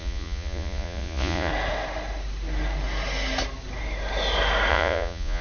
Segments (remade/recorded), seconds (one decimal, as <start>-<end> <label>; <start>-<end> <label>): 0.0-1.5 remade; 1.5-4.7 recorded; 4.7-5.4 remade